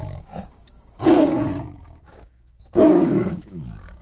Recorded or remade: remade